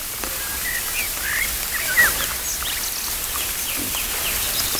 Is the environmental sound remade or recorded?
recorded